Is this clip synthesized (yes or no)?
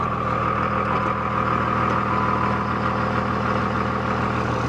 no